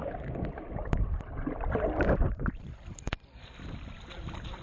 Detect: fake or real fake